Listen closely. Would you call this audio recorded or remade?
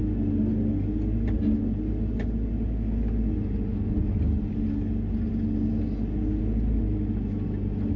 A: recorded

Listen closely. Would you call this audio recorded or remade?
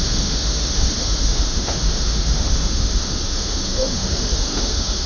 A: remade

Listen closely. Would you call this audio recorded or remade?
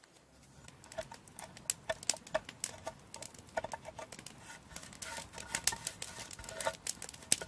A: recorded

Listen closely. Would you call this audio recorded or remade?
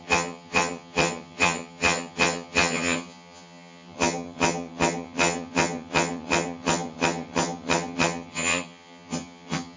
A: remade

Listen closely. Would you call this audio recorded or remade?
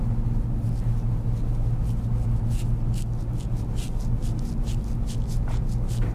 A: recorded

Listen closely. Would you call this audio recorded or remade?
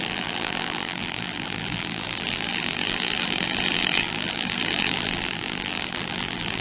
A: remade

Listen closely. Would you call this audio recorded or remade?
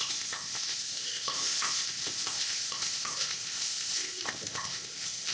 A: remade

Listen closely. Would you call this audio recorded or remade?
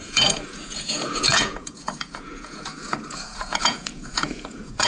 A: remade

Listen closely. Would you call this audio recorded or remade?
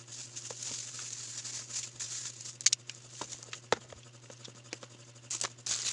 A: recorded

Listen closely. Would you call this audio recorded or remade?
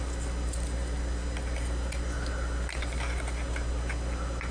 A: recorded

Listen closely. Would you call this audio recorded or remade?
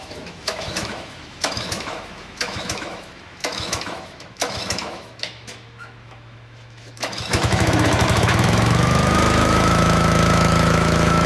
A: remade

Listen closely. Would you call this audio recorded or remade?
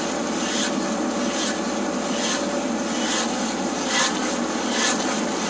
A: recorded